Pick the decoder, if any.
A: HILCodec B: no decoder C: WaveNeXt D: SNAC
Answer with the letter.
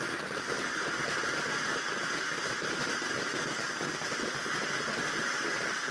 B